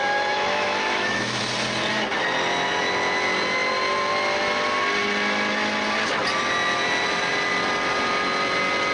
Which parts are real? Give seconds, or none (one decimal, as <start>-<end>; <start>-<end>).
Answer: 1.4-8.9